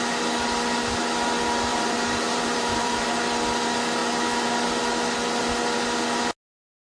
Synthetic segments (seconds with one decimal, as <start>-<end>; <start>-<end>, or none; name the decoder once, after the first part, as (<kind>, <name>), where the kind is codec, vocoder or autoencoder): 1.7-3.0 (vocoder, BigVGAN v2)